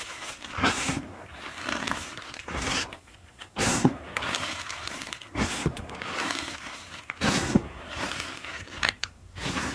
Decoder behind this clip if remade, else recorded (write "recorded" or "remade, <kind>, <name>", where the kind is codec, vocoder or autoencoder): remade, codec, SNAC